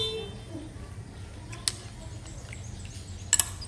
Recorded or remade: recorded